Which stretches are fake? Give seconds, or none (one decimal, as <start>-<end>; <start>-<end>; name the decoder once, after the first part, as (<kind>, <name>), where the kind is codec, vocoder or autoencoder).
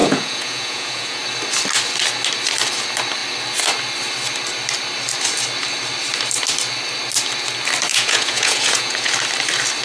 0.0-1.2 (vocoder, Vocos); 7.9-9.1